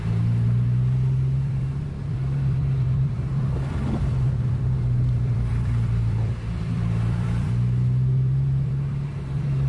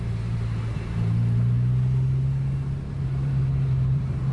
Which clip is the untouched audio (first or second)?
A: second